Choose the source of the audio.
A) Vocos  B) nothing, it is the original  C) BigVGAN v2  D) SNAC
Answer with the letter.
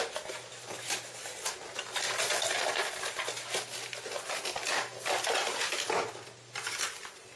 B